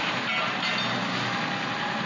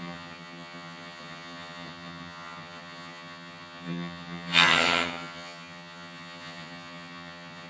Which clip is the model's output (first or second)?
second